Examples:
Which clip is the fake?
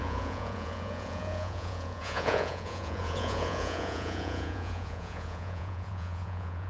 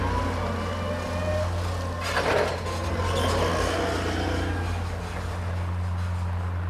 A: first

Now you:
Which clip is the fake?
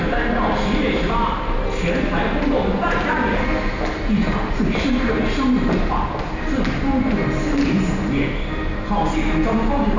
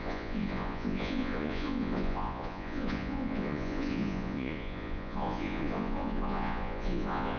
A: second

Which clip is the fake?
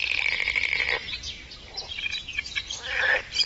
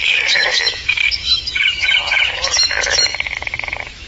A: second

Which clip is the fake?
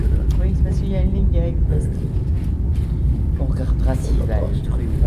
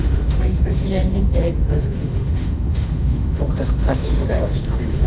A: second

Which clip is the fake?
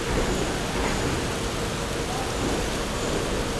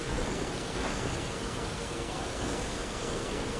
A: second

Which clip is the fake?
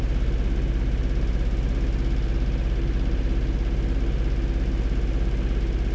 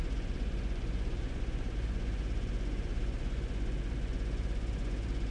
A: second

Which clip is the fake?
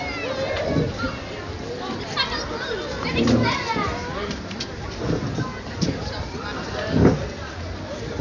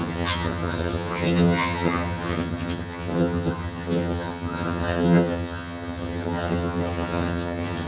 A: second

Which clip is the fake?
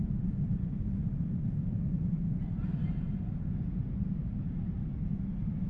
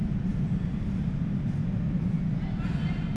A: first